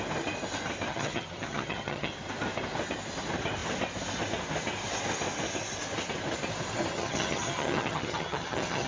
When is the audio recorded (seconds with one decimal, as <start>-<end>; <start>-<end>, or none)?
0.0-0.9; 2.1-6.9